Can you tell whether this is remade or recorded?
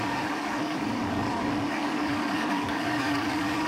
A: remade